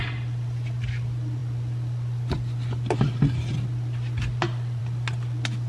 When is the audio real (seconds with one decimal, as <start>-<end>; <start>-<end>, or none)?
0.0-5.7